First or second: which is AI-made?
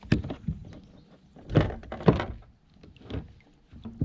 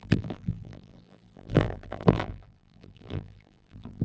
second